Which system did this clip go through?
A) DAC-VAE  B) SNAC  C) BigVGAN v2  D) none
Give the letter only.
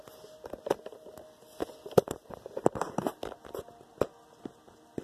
D